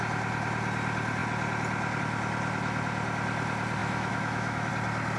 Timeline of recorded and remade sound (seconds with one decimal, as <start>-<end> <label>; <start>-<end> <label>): 0.0-3.8 recorded; 3.8-4.7 remade; 4.7-5.2 recorded